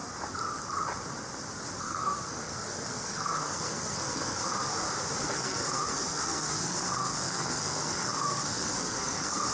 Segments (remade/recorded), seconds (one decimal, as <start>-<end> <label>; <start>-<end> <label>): 0.0-1.8 recorded; 1.8-4.7 remade; 4.7-5.2 recorded; 5.2-9.5 remade